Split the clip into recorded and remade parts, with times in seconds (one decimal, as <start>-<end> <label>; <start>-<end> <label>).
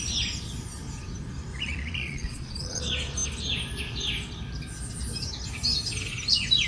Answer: 0.0-1.5 recorded; 1.5-2.8 remade; 2.8-6.7 recorded